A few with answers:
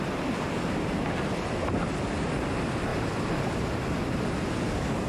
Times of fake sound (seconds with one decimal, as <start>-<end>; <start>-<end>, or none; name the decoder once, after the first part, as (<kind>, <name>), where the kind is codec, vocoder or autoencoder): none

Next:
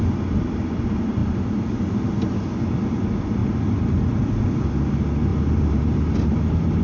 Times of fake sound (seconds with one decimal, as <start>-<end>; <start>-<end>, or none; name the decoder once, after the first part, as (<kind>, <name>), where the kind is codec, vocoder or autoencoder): 1.2-1.8 (vocoder, BigVGAN v2); 5.3-6.8

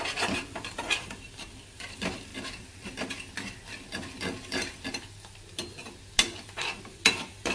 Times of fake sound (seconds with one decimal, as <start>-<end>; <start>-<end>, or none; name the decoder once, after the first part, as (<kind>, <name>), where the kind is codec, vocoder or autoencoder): 0.0-2.3 (vocoder, BigVGAN v2); 6.8-7.5

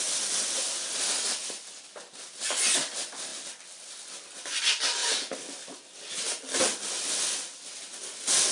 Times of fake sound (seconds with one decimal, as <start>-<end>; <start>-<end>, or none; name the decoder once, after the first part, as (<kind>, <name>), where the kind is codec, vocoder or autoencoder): none

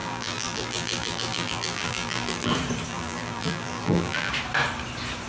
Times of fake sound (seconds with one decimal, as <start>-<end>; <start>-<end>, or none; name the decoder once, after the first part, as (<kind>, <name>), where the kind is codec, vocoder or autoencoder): 0.0-2.5 (vocoder, BigVGAN v2); 2.9-4.3